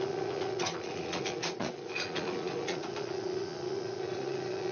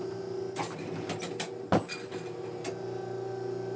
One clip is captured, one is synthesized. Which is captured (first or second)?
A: second